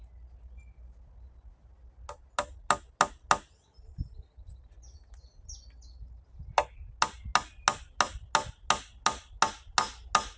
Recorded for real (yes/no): yes